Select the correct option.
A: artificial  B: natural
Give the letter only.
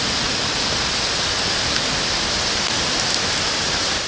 B